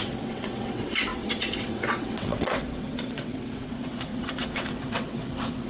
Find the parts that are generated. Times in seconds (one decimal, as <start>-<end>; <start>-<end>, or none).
0.0-5.7